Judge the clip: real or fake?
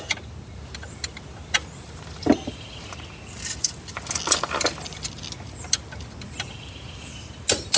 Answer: real